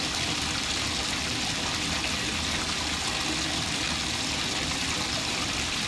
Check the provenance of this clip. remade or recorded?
recorded